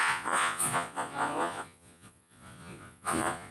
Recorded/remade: remade